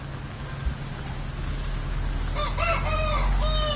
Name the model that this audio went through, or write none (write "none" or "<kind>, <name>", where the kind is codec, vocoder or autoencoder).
none